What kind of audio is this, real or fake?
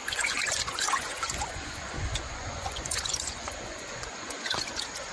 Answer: fake